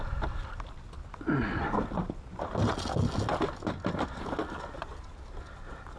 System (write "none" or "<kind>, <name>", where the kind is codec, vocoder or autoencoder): none